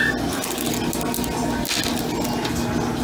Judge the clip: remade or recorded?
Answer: recorded